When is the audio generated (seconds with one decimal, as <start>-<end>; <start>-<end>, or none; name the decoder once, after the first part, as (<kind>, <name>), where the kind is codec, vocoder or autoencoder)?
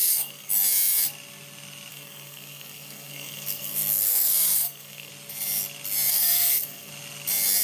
0.0-0.5 (codec, SNAC); 1.9-5.1; 6.1-6.9